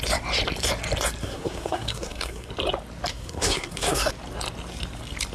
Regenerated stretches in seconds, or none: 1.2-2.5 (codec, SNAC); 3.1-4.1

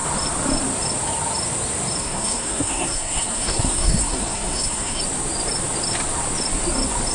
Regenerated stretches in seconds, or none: 2.0-5.0 (codec, SNAC)

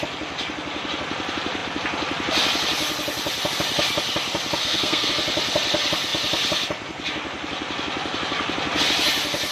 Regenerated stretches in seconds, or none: 4.6-5.1 (codec, SNAC)

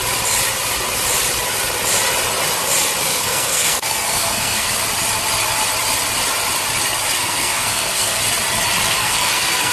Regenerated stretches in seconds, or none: 3.1-4.7 (codec, SNAC); 7.2-8.2; 9.0-9.7

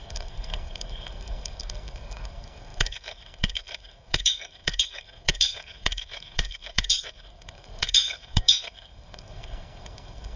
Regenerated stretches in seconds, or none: 0.0-10.4 (codec, SNAC)

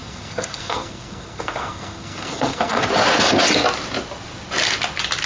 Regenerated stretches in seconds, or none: 0.0-2.8 (codec, SNAC)